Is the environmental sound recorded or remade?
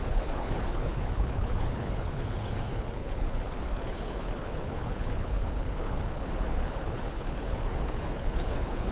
remade